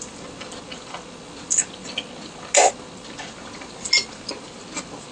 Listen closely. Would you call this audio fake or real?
real